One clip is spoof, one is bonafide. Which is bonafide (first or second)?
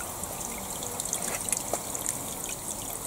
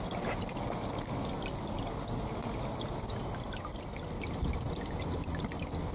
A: first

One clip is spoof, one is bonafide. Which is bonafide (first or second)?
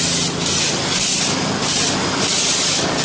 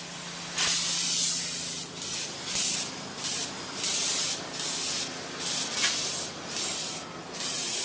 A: second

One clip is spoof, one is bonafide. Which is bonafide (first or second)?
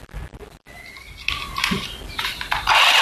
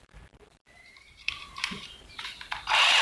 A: first